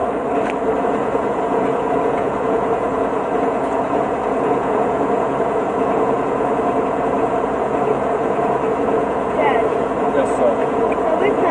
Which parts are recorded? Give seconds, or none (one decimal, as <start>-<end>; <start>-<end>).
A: 0.0-0.8